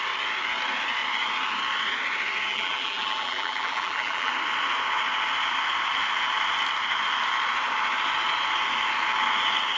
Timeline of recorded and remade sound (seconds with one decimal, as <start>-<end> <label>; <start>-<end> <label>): 0.0-2.5 recorded; 2.5-4.3 remade; 4.3-9.8 recorded